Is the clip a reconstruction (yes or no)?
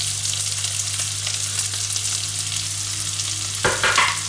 no